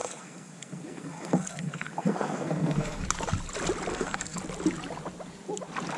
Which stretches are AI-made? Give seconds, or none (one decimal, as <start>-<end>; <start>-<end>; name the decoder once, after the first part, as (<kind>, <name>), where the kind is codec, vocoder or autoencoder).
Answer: 0.0-3.0 (codec, SNAC); 3.9-4.4

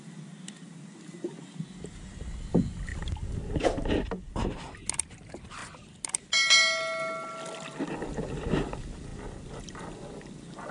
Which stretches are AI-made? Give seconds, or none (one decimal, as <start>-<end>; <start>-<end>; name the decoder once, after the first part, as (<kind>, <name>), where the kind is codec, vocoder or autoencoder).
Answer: none

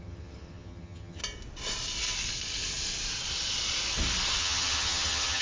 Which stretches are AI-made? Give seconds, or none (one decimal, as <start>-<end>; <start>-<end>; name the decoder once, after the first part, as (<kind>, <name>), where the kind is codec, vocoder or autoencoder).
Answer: 0.0-1.2 (vocoder, HiFi-GAN); 4.4-5.4

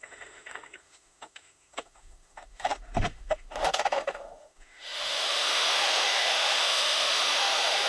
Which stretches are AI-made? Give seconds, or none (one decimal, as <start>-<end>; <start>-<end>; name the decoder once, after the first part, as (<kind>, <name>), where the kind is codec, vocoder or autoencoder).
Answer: 0.0-7.9 (autoencoder, DAC-VAE)

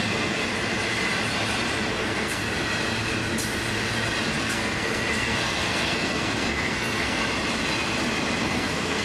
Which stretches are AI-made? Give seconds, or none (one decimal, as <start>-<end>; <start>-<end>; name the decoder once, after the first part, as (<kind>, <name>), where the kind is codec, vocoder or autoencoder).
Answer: 0.0-0.4 (codec, SNAC); 1.9-2.4; 4.4-7.2; 8.4-9.0

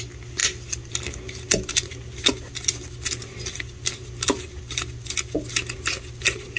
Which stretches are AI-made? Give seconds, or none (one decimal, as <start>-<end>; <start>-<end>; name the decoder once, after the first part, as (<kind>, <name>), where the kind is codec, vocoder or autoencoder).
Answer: none

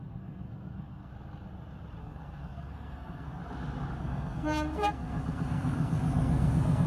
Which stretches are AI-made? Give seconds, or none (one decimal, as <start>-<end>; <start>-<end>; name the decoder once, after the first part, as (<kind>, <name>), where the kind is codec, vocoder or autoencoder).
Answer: 0.0-1.1 (codec, SNAC); 2.0-3.4; 4.0-6.9